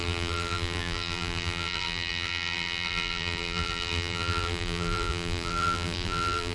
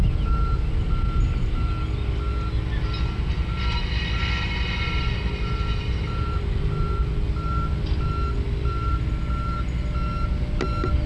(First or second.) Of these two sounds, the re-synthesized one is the first